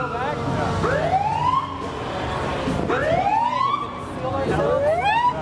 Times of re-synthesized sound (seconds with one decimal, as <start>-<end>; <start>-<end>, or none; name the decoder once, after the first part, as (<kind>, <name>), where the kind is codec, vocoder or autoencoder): none